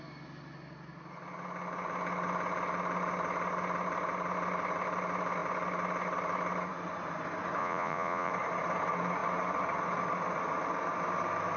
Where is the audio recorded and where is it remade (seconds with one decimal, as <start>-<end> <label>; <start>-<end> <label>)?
0.0-7.6 recorded; 7.6-8.3 remade; 8.3-11.6 recorded